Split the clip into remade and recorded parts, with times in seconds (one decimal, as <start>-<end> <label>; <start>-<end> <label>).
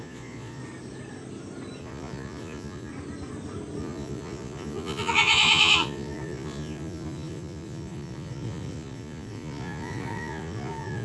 0.0-0.6 remade; 0.6-1.8 recorded; 1.8-2.9 remade; 2.9-3.8 recorded; 3.8-11.0 remade